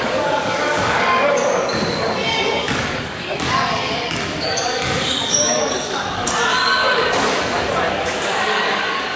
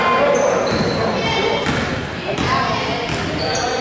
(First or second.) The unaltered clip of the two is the second